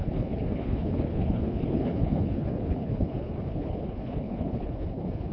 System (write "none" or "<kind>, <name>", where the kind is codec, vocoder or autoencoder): codec, HILCodec